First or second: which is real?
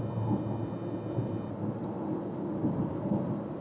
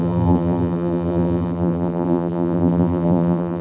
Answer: first